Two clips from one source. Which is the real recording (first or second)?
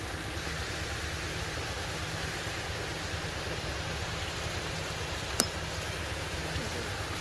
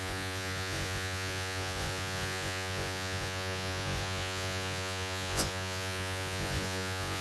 first